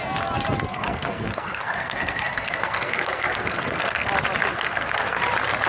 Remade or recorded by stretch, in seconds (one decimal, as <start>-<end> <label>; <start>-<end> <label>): 0.0-0.7 recorded; 0.7-4.1 remade; 4.1-4.5 recorded; 4.5-5.2 remade; 5.2-5.7 recorded